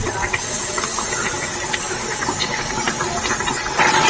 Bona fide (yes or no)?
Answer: yes